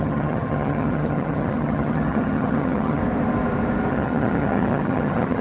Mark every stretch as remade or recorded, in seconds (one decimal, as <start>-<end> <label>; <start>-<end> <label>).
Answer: 0.0-3.0 remade; 3.0-3.9 recorded; 3.9-5.4 remade